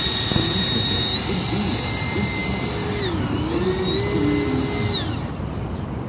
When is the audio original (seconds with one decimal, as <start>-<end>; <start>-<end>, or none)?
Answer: 0.0-6.1